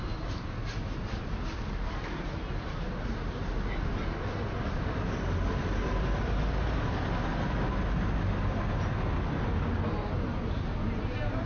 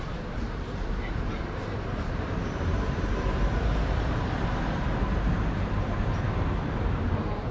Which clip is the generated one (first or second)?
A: second